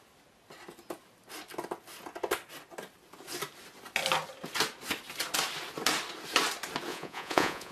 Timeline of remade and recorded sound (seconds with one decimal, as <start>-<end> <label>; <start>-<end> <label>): 0.0-6.9 recorded; 6.9-7.7 remade